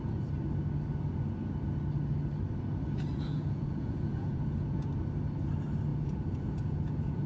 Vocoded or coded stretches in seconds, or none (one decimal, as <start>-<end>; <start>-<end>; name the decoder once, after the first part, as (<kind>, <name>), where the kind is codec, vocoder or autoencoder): 3.1-4.9 (vocoder, Vocos); 5.9-7.3